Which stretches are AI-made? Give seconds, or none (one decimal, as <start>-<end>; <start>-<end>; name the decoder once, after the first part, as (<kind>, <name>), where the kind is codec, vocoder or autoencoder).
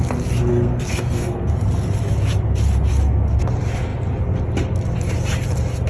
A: 0.5-1.5 (codec, SNAC); 2.9-3.4